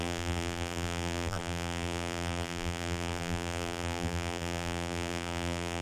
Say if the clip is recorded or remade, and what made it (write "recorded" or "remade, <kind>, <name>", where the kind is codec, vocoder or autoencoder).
remade, vocoder, BigVGAN v2